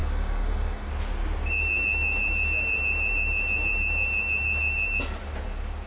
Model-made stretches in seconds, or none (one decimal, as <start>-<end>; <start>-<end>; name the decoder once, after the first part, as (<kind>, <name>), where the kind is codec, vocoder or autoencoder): 0.0-0.9 (codec, DAC)